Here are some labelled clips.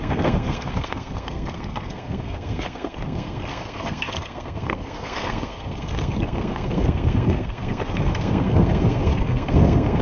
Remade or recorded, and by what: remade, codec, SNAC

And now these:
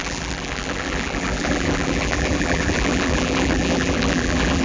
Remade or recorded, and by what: remade, vocoder, BigVGAN v2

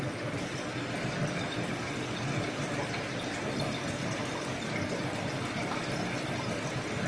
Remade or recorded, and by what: recorded